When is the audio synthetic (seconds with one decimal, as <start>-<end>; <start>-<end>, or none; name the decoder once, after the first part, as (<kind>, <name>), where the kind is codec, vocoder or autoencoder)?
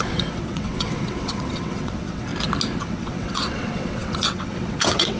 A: 0.0-2.3 (vocoder, WaveNeXt); 2.8-5.2